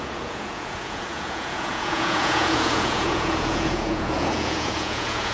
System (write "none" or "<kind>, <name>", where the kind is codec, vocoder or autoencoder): vocoder, Vocos